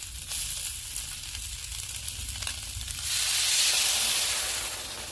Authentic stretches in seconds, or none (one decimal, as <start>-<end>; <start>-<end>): 0.0-5.1